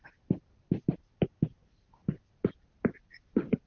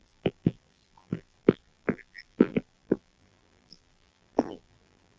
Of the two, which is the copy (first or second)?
second